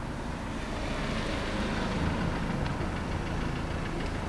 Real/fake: real